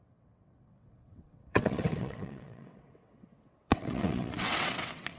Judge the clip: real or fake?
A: fake